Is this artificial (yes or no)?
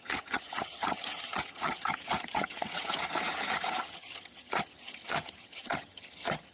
yes